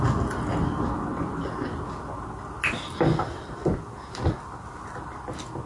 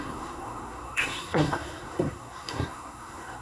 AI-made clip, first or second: second